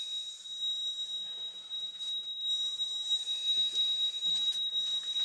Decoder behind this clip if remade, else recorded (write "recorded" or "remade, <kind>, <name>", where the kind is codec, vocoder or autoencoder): recorded